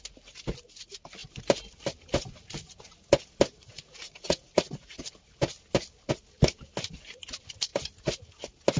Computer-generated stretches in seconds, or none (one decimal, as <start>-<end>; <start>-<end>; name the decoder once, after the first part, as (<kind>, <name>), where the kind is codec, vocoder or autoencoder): 3.5-5.1 (vocoder, Vocos)